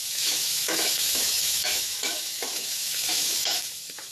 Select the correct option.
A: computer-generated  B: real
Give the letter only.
A